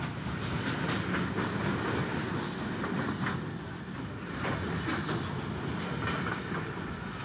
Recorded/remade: recorded